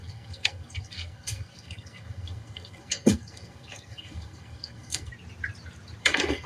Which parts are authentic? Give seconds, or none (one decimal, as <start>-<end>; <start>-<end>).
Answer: 5.1-6.0